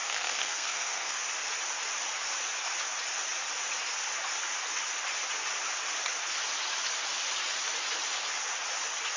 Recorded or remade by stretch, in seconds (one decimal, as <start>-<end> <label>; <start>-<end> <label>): 0.0-1.2 remade; 1.2-9.2 recorded